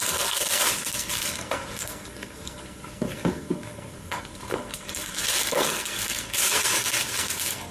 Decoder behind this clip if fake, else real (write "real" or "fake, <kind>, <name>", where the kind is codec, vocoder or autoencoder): fake, codec, SNAC